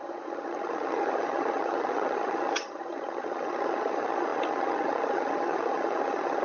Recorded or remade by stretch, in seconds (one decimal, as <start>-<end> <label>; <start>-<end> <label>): 0.0-6.4 remade